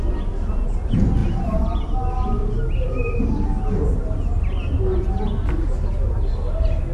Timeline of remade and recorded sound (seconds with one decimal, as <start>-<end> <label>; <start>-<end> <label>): 0.0-6.9 recorded